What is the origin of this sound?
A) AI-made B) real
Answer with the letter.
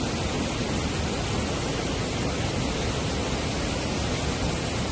B